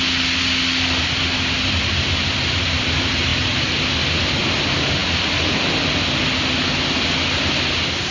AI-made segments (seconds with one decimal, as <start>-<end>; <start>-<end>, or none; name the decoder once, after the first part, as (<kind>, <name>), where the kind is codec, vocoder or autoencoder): none